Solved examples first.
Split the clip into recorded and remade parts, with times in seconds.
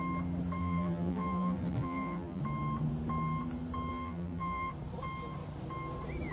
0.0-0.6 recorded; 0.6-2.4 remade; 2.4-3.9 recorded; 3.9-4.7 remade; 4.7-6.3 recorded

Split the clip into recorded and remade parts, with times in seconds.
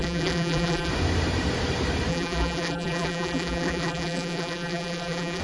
0.0-0.9 remade; 0.9-2.1 recorded; 2.1-5.4 remade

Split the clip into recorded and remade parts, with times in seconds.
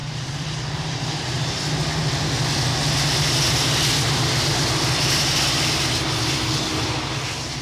0.0-1.0 remade; 1.0-7.6 recorded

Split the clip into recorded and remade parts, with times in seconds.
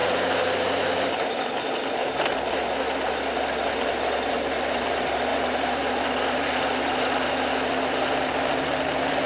0.0-9.3 recorded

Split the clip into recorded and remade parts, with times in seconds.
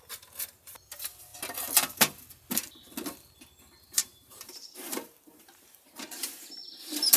0.0-4.0 recorded; 4.0-6.5 remade; 6.5-7.2 recorded